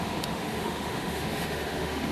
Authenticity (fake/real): fake